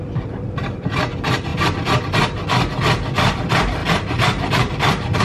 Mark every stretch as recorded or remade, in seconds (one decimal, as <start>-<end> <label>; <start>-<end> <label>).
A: 0.0-1.5 remade; 1.5-2.0 recorded; 2.0-2.4 remade; 2.4-3.4 recorded; 3.4-5.2 remade